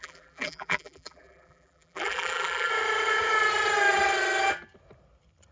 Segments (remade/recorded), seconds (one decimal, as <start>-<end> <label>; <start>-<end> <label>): 0.0-2.7 remade; 2.7-5.5 recorded